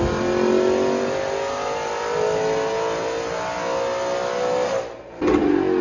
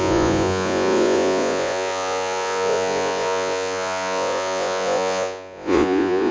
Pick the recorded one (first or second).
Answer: first